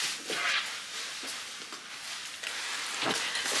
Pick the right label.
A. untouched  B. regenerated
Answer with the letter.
A